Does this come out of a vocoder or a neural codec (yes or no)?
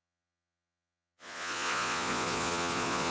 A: yes